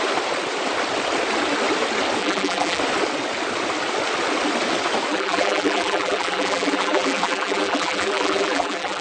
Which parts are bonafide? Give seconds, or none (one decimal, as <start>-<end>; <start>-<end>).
0.0-2.2; 2.8-5.1